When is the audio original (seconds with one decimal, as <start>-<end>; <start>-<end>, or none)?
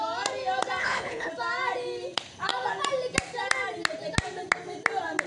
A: 0.0-0.8; 1.3-5.3